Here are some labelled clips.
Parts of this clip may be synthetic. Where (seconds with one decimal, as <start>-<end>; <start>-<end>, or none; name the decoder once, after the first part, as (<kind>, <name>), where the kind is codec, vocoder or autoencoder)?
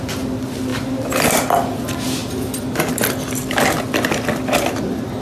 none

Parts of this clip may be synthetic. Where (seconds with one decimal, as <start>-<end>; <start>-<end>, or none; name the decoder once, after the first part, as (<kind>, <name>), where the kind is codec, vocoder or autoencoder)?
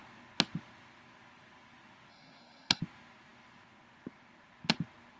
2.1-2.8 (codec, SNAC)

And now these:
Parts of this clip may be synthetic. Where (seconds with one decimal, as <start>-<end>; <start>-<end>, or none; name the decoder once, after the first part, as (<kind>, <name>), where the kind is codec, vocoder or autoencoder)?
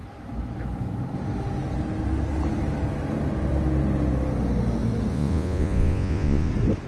5.1-6.5 (vocoder, Vocos)